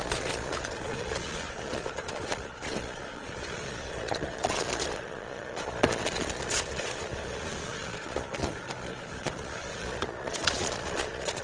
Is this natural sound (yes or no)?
no